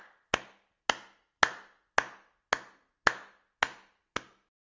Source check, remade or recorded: recorded